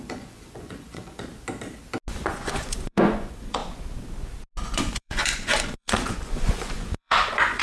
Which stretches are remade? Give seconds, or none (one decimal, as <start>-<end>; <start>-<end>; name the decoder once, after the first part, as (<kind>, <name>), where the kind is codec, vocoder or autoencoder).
0.0-1.3 (vocoder, Vocos); 2.1-3.6; 4.6-7.6